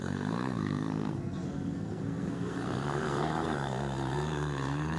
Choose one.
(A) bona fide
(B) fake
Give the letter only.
B